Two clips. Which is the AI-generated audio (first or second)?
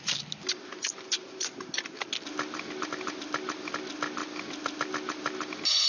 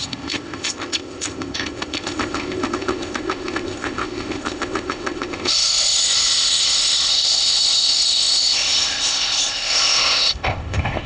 second